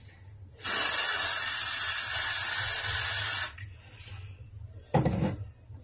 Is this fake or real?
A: real